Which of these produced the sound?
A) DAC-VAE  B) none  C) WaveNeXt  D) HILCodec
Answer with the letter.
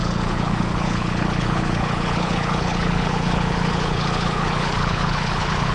D